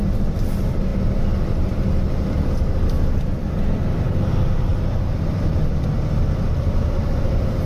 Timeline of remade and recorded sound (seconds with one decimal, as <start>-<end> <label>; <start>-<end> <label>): 0.0-4.7 recorded; 4.7-5.3 remade; 5.3-7.7 recorded